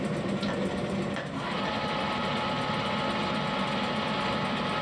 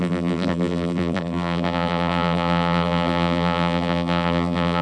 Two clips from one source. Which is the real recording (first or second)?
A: first